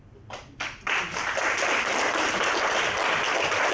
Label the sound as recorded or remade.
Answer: recorded